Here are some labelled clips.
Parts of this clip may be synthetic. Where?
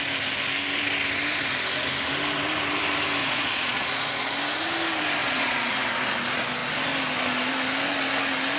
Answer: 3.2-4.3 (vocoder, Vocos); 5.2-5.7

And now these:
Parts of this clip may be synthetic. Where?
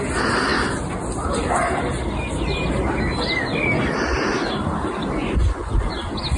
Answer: 5.2-5.9 (vocoder, Vocos)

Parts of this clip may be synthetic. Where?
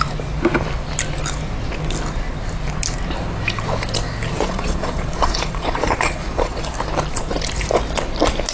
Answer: 4.3-6.6 (vocoder, Vocos)